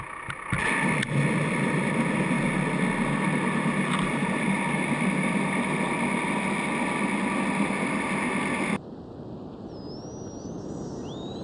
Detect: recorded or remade recorded